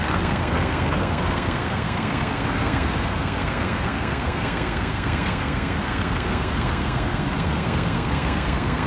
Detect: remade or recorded remade